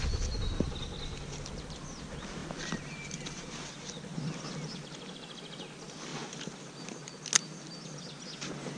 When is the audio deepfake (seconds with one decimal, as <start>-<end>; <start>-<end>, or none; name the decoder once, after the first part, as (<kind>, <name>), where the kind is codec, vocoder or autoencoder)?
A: none